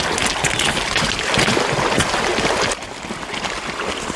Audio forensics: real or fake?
real